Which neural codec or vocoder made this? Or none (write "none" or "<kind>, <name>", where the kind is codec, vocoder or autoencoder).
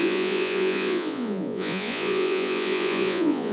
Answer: vocoder, Vocos